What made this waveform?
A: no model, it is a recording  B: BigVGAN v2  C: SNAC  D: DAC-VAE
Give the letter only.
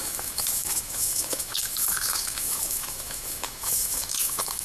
D